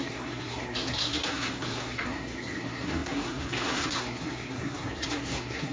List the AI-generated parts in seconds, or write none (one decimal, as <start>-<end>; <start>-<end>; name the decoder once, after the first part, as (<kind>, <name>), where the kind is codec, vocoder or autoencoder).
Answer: 0.0-5.7 (codec, SNAC)